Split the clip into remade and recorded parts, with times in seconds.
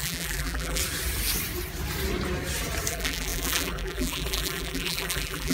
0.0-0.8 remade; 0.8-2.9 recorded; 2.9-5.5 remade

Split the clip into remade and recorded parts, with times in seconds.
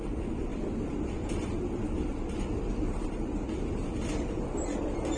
0.0-0.5 recorded; 0.5-3.6 remade; 3.6-5.2 recorded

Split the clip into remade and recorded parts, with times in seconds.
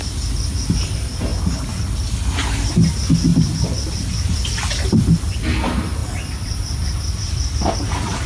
0.0-3.3 recorded; 3.3-4.4 remade; 4.4-6.0 recorded; 6.0-8.3 remade